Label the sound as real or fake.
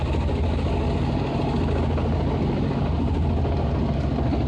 real